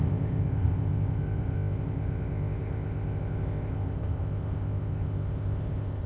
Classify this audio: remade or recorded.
remade